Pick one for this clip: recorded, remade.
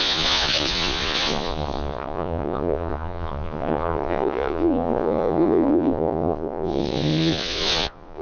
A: remade